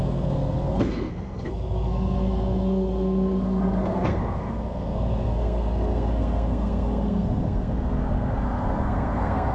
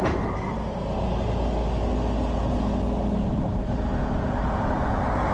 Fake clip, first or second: first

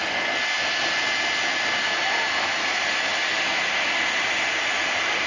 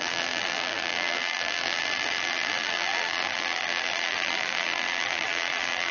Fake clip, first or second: second